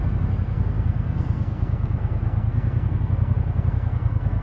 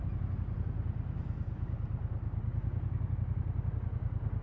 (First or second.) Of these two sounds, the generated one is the first